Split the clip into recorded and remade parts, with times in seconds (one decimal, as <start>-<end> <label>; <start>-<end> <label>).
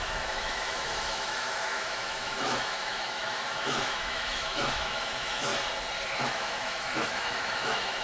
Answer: 0.0-5.5 remade; 5.5-6.2 recorded; 6.2-8.0 remade